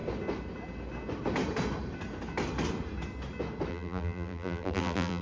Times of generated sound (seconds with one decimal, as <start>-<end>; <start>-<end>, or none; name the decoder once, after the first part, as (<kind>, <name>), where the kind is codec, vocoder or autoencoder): 3.7-5.2 (vocoder, BigVGAN v2)